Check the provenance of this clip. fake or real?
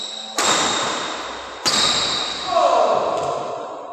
real